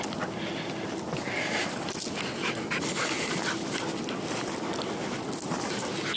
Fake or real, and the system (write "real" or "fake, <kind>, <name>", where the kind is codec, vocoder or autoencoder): real